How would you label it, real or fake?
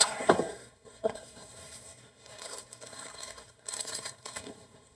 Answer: fake